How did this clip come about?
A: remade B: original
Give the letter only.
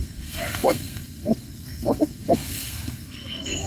A